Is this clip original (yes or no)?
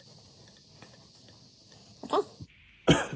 yes